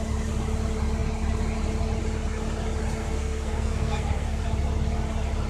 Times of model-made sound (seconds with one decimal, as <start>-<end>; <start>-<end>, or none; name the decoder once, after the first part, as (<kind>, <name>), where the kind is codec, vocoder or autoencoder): 3.0-4.4 (codec, SNAC)